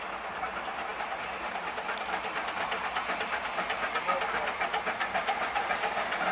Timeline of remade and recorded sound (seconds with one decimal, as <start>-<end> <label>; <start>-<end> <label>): 0.0-6.3 recorded